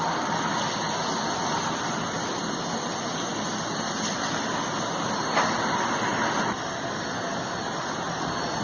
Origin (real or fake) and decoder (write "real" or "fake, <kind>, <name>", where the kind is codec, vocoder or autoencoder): real